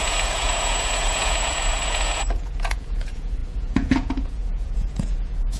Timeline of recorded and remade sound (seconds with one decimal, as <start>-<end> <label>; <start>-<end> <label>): 0.0-5.6 remade